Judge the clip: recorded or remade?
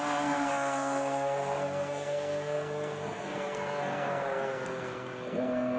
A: remade